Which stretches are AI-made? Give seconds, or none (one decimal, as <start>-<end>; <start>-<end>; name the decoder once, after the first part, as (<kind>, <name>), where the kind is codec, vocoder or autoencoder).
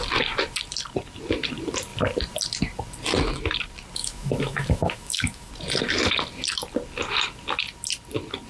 4.0-5.5 (autoencoder, DAC-VAE)